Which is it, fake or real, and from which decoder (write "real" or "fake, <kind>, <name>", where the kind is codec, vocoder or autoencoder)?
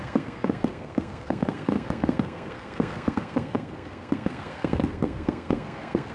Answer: fake, codec, SNAC